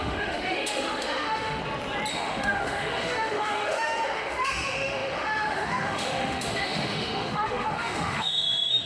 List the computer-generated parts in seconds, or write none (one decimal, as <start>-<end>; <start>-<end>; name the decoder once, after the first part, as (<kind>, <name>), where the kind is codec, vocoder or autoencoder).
0.0-1.6 (autoencoder, DAC-VAE); 2.1-8.9

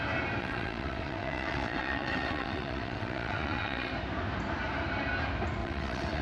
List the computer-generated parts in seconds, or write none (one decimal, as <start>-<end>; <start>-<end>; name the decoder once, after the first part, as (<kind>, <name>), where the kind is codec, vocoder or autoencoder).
0.4-3.9 (vocoder, WaveNeXt); 5.6-6.2

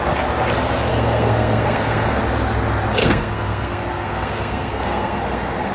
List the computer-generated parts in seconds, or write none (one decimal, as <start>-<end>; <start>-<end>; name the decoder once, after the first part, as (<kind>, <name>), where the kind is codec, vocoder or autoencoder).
0.9-2.2 (codec, SNAC); 3.0-5.7

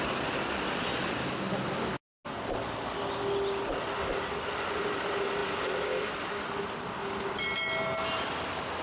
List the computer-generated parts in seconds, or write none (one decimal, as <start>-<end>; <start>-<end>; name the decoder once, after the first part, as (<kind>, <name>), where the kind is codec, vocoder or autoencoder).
none

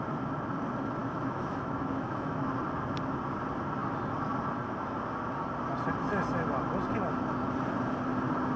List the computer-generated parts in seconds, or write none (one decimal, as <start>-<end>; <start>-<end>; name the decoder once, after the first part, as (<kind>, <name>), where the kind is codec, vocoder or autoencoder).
1.0-2.4 (autoencoder, DAC-VAE)

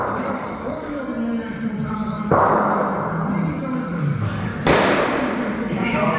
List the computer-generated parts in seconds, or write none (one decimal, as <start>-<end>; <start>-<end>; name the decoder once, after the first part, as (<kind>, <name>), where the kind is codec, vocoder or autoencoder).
0.0-1.1 (codec, DAC); 1.9-2.7; 3.5-4.5; 5.6-6.2

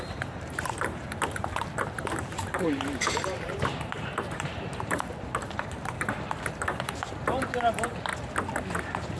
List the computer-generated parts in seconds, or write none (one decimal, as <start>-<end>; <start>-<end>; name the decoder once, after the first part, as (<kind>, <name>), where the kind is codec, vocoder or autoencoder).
0.0-8.1 (vocoder, BigVGAN v2)